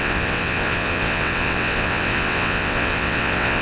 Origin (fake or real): fake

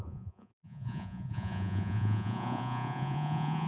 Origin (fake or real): fake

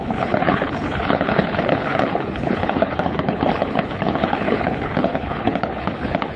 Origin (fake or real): fake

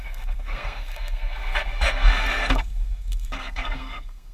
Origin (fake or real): fake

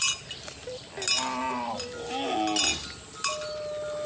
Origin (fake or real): real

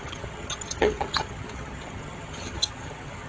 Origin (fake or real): fake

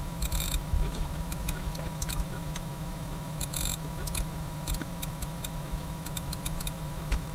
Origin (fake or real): fake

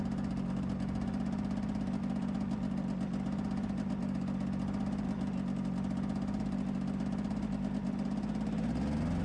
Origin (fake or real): real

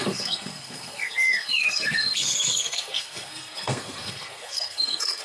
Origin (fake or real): fake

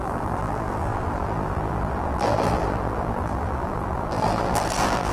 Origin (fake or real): fake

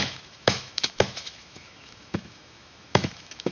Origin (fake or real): fake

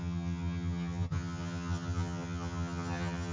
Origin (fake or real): fake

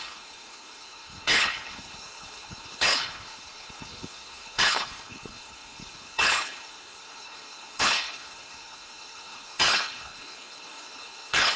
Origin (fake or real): fake